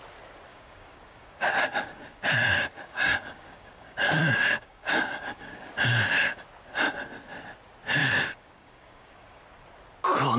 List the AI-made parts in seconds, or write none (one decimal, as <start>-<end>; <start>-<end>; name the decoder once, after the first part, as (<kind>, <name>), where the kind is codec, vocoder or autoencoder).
0.5-5.7 (codec, DAC); 8.0-9.4